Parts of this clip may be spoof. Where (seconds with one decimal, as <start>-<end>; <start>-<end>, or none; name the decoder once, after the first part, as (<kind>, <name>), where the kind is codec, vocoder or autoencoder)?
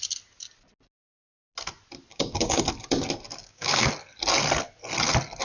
2.1-2.6 (codec, DAC); 3.4-3.9